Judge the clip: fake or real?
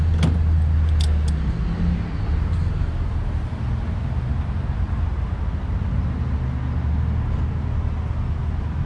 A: real